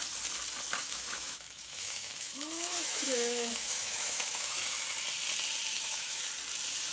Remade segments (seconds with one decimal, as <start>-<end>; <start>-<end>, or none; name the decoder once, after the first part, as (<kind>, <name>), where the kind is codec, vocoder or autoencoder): 0.8-4.7 (autoencoder, DAC-VAE); 5.7-6.3